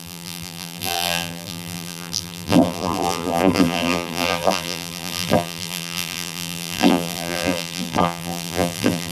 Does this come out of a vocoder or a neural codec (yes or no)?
yes